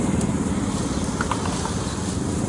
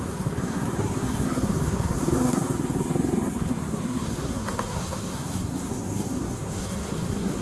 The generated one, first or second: second